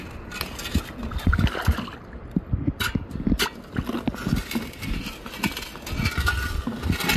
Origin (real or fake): real